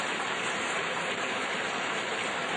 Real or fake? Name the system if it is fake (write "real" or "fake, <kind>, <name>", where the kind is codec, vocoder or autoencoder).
fake, vocoder, BigVGAN v2